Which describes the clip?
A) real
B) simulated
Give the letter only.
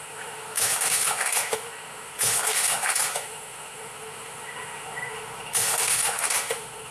B